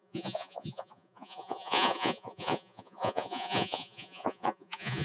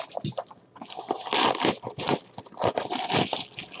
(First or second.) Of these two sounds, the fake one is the first